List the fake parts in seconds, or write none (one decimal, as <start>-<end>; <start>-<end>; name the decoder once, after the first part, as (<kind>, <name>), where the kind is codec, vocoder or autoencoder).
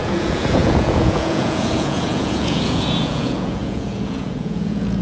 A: 0.0-5.0 (vocoder, Vocos)